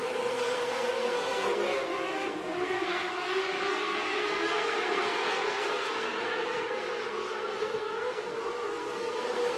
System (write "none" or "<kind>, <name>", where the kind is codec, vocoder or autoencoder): codec, SNAC